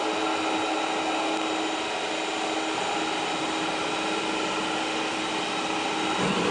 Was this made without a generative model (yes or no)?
yes